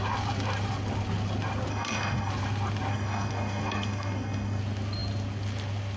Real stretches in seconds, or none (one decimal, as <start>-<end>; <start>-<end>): 0.0-1.7; 2.3-2.9; 4.6-6.0